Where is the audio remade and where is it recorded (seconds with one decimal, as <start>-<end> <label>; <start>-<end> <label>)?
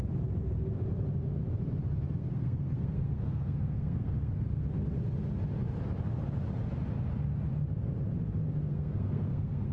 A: 0.0-2.2 recorded; 2.2-4.4 remade; 4.4-8.6 recorded; 8.6-9.7 remade